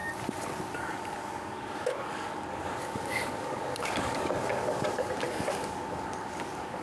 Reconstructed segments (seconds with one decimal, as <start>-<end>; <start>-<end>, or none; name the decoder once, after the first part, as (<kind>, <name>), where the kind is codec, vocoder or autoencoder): 0.7-6.8 (codec, DAC)